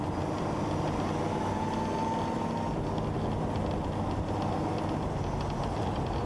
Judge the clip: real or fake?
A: real